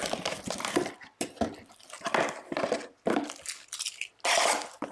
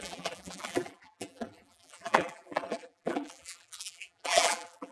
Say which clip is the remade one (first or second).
second